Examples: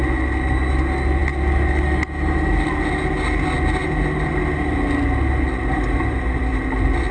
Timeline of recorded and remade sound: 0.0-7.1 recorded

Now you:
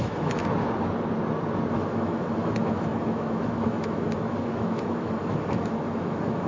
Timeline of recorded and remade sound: 0.0-0.4 remade; 0.4-1.7 recorded; 1.7-6.5 remade

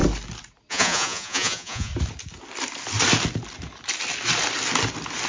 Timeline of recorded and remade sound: 0.0-0.7 recorded; 0.7-1.9 remade; 1.9-5.3 recorded

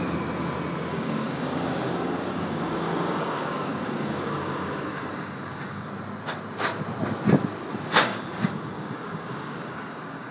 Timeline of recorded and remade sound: 0.0-0.9 recorded; 0.9-5.9 remade; 5.9-7.7 recorded; 7.7-10.3 remade

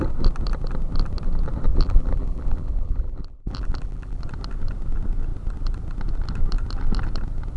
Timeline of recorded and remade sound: 0.0-1.7 recorded; 1.7-4.2 remade; 4.2-7.6 recorded

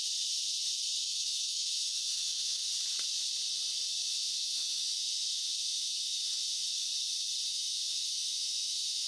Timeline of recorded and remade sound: 0.0-1.0 recorded; 1.0-2.7 remade; 2.7-4.1 recorded; 4.1-6.9 remade; 6.9-7.5 recorded; 7.5-9.1 remade

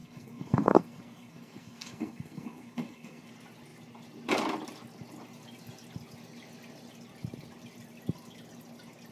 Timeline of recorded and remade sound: 0.0-3.3 remade; 3.3-9.1 recorded